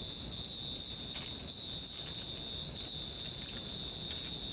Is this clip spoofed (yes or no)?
no